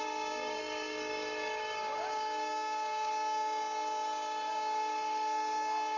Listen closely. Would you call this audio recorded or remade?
remade